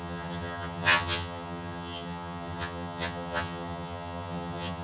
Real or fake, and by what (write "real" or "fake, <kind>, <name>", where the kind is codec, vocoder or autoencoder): fake, vocoder, HiFi-GAN